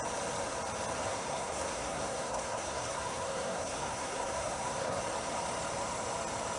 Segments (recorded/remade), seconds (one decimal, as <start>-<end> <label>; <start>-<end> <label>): 0.0-1.0 recorded; 1.0-5.0 remade; 5.0-6.6 recorded